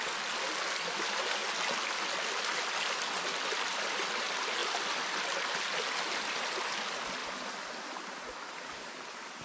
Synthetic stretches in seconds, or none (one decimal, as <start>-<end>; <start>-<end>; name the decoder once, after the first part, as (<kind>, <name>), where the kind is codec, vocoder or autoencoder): none